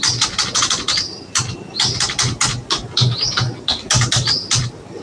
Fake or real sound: real